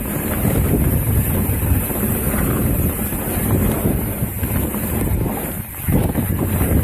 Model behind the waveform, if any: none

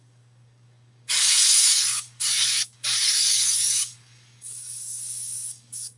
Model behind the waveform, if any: codec, DAC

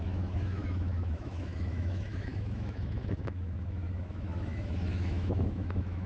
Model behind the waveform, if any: autoencoder, DAC-VAE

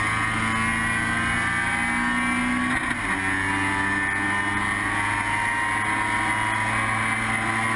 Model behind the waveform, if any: none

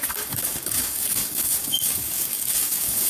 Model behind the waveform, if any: codec, DAC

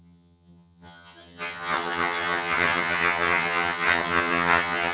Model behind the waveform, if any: vocoder, HiFi-GAN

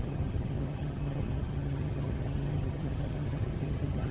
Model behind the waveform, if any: vocoder, HiFi-GAN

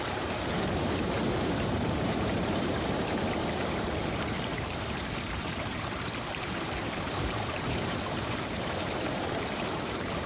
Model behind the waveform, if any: vocoder, BigVGAN v2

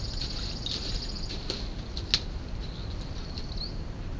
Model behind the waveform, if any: none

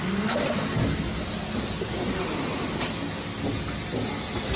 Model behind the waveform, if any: none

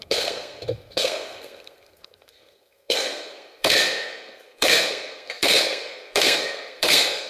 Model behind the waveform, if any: codec, SNAC